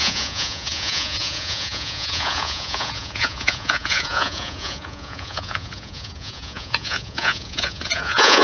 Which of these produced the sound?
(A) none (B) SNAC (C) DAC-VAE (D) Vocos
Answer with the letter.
D